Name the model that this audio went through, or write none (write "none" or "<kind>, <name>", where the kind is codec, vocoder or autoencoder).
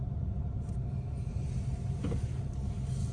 none